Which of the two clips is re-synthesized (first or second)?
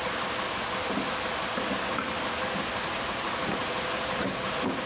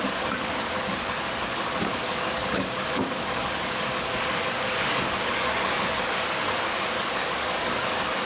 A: second